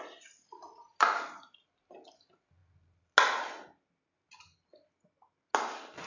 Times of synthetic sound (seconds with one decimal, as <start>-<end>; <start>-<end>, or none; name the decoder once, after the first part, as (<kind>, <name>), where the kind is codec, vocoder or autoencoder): none